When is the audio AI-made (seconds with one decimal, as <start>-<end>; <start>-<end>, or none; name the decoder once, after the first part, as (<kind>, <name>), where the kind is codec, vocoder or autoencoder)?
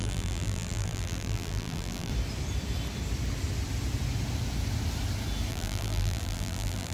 0.0-2.1 (vocoder, BigVGAN v2); 5.5-6.9